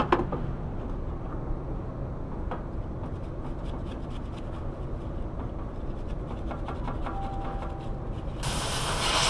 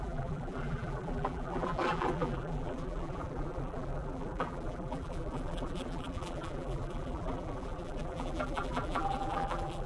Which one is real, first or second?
first